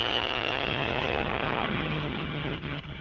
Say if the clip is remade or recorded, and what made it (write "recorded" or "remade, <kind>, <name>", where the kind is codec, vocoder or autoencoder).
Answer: remade, vocoder, HiFi-GAN